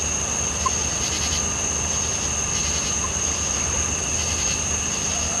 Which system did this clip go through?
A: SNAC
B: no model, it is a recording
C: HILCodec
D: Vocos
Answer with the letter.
B